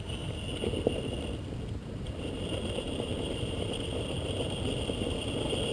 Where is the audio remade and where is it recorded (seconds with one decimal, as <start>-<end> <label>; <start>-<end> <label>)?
0.0-1.8 recorded; 1.8-3.8 remade; 3.8-5.7 recorded